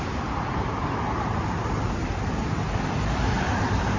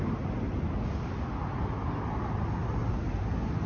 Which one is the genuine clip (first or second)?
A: second